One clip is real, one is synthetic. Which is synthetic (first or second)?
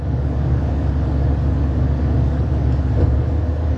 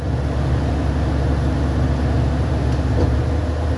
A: first